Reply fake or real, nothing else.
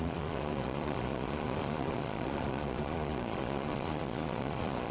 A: fake